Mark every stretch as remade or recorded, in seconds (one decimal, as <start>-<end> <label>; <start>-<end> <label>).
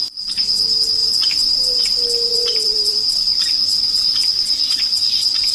0.0-1.0 recorded; 1.0-1.8 remade; 1.8-2.3 recorded; 2.3-3.3 remade; 3.3-5.5 recorded